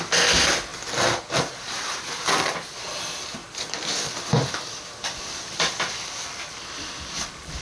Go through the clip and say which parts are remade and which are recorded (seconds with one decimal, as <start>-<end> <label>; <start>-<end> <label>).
0.0-7.6 recorded